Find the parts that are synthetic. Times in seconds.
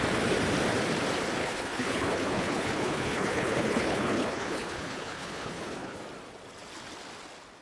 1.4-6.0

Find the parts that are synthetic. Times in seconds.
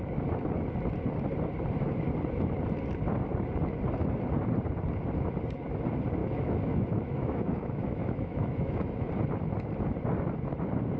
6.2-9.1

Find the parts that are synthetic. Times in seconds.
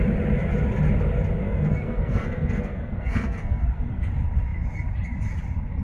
1.4-4.1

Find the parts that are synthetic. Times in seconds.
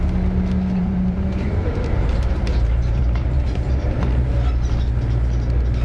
0.8-4.3